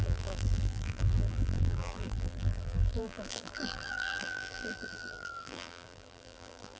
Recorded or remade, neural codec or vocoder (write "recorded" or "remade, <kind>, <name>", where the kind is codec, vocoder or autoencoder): remade, vocoder, BigVGAN v2